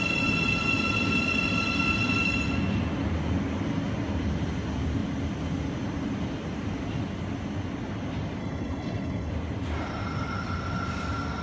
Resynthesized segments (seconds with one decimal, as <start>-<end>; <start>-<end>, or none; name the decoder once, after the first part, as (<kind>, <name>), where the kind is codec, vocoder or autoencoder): 8.4-9.3 (codec, HILCodec)